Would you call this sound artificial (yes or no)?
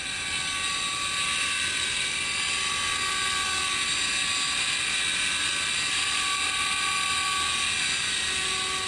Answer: no